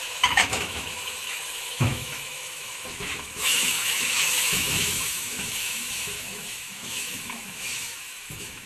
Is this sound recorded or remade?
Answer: remade